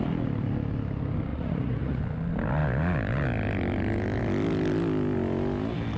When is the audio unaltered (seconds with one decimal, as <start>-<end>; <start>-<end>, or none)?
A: 0.0-1.3; 2.0-6.0